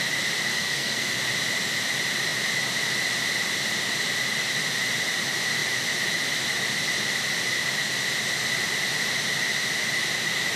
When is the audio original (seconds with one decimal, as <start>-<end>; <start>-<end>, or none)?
0.0-0.5; 1.2-10.6

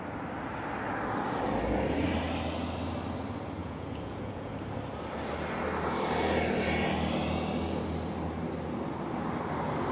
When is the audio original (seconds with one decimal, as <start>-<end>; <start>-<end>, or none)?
0.0-3.6; 4.5-9.9

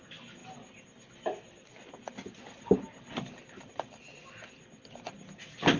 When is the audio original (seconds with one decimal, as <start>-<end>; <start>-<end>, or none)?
0.0-5.8